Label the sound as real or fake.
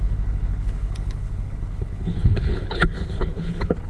fake